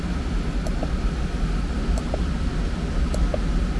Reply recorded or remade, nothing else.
recorded